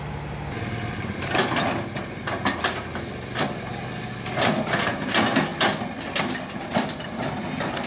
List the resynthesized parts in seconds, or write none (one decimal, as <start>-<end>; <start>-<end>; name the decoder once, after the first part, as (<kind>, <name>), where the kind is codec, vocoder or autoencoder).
none